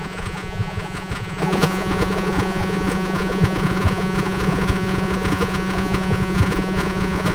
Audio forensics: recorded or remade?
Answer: remade